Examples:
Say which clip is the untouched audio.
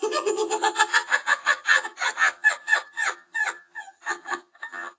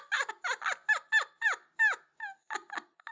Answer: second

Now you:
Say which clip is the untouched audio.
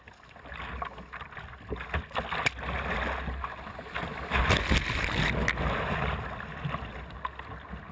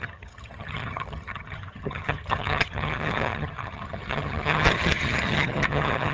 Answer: first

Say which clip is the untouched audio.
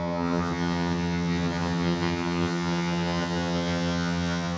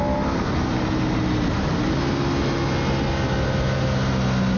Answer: second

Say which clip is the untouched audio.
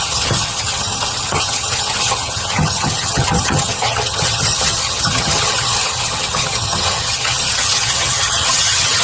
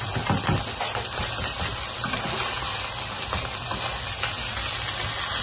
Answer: second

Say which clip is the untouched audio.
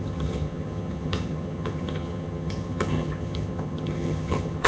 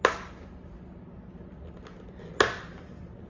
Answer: second